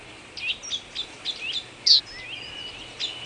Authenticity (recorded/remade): recorded